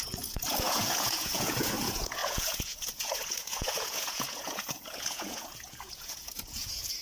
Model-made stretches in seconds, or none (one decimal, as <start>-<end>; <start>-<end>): 0.0-7.0